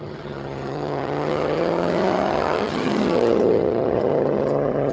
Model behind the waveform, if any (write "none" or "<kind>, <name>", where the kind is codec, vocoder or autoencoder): vocoder, HiFi-GAN